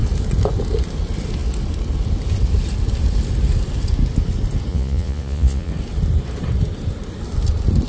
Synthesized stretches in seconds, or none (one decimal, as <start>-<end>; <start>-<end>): 4.7-5.7